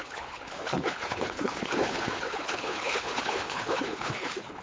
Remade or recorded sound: remade